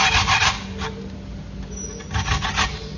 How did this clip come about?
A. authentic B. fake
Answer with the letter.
A